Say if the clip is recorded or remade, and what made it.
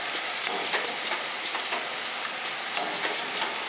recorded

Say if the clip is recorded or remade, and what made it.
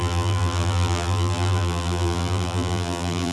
remade, vocoder, BigVGAN v2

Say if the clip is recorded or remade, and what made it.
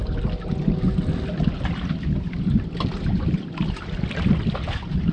remade, vocoder, BigVGAN v2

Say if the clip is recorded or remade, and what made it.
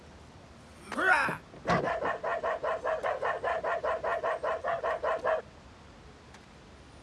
recorded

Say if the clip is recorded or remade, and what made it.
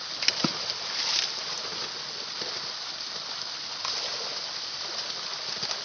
recorded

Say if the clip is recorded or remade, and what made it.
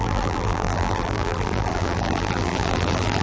remade, vocoder, BigVGAN v2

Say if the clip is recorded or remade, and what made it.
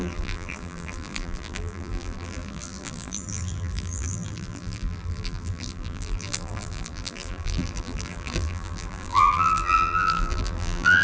remade, vocoder, BigVGAN v2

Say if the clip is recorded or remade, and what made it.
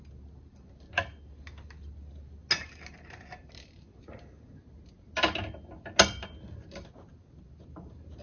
recorded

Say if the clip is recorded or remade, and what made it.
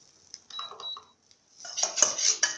recorded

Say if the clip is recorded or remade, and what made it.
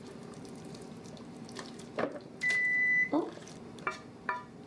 remade, vocoder, BigVGAN v2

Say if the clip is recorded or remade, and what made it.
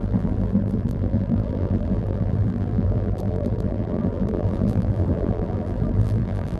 remade, vocoder, BigVGAN v2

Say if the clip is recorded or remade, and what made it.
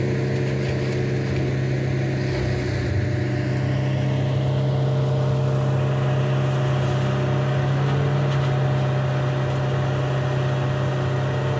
recorded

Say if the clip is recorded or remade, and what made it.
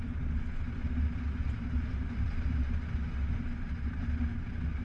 recorded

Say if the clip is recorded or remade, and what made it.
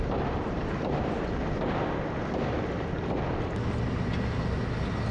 recorded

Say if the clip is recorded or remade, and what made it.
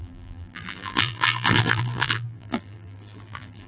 remade, vocoder, BigVGAN v2